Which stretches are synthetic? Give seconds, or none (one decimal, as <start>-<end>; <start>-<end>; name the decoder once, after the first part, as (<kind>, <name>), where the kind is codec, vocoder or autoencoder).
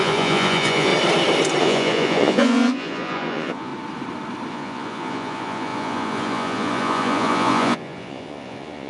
0.0-0.9 (vocoder, Vocos); 1.6-3.7; 4.5-8.9